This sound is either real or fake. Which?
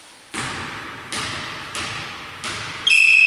fake